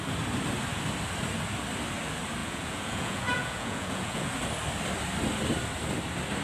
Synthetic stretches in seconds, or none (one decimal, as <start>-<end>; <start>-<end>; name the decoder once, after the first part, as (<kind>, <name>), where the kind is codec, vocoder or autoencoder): 2.4-4.3 (vocoder, Vocos)